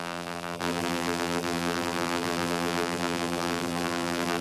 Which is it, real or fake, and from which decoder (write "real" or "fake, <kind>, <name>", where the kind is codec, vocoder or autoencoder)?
fake, vocoder, BigVGAN v2